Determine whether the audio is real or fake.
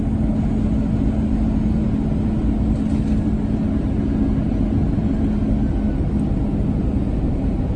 real